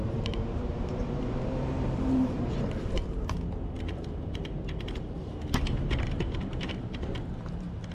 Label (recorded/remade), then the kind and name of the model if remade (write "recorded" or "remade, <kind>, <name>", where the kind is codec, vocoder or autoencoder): remade, vocoder, BigVGAN v2